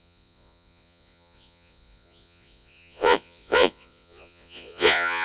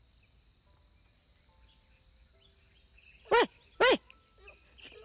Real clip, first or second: second